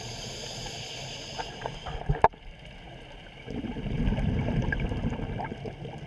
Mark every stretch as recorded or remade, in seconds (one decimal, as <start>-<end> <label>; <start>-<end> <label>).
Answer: 0.0-6.1 recorded